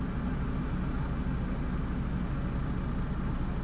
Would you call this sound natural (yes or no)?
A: yes